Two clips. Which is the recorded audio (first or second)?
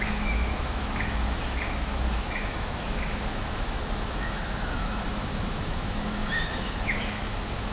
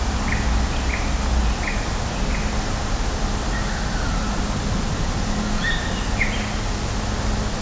second